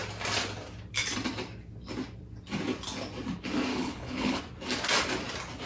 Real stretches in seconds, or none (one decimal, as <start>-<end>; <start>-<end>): 0.0-3.7; 4.4-5.7